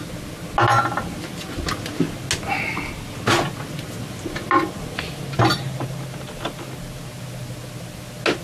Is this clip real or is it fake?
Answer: real